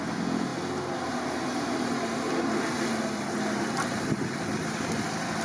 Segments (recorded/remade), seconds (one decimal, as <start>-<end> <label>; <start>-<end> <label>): 0.0-5.4 recorded

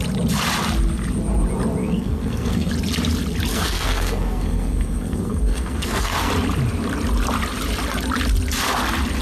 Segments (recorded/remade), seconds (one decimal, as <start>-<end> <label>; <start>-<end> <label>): 0.0-1.8 recorded; 1.8-2.7 remade; 2.7-3.5 recorded; 3.5-6.3 remade; 6.3-9.2 recorded

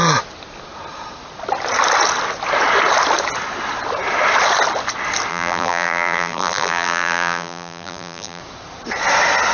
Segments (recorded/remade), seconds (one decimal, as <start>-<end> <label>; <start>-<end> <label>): 0.0-5.3 recorded; 5.3-8.4 remade; 8.4-9.5 recorded